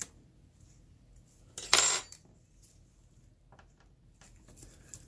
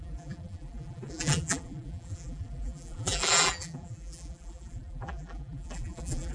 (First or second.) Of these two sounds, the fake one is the second